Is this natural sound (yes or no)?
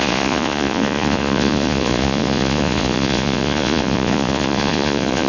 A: no